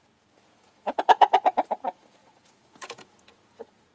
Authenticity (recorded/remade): remade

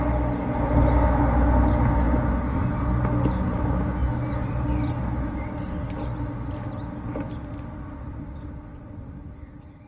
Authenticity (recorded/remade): recorded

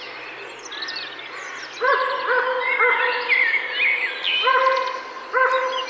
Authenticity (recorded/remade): recorded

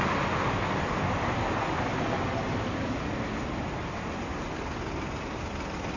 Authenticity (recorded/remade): recorded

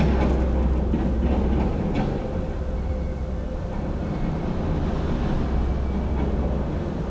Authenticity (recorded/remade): recorded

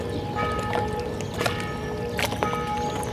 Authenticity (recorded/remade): recorded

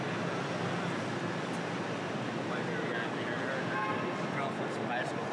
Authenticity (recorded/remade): recorded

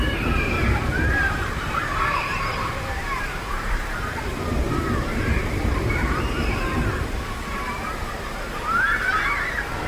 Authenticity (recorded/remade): remade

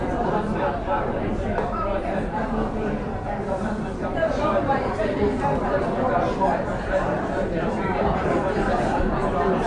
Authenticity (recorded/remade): remade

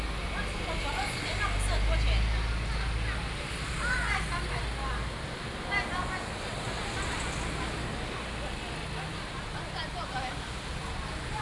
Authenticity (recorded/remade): recorded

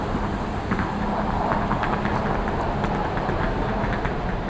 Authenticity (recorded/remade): recorded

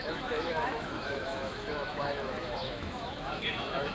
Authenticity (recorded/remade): remade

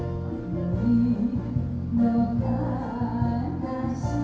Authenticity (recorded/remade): recorded